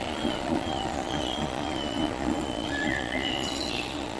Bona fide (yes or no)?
no